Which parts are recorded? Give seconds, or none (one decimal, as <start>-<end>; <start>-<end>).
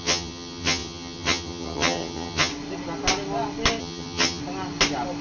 2.5-3.8; 4.4-5.2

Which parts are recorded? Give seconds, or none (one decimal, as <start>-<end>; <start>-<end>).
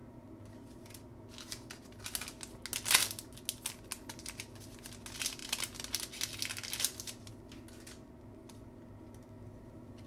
0.0-10.1